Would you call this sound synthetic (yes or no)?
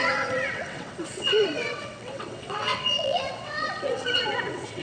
yes